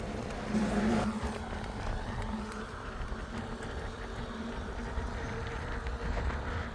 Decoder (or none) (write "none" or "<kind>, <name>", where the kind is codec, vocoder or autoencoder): none